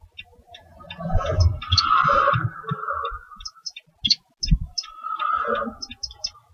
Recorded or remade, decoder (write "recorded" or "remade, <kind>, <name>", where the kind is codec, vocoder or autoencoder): recorded